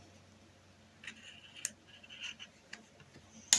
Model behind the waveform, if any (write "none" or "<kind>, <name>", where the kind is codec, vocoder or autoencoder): none